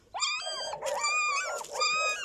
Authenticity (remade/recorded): recorded